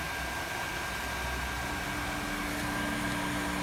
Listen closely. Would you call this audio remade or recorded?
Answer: recorded